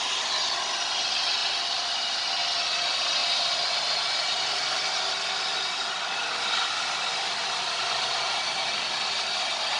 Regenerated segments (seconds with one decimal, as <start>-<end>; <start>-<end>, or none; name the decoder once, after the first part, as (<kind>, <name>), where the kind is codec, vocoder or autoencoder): none